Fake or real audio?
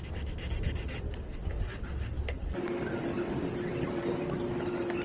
real